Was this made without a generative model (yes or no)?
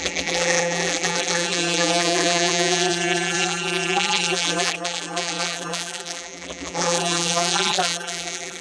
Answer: no